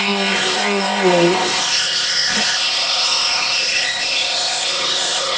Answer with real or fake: fake